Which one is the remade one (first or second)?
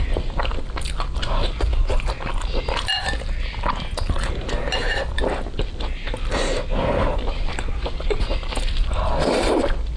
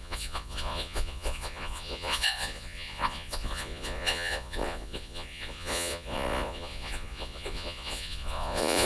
second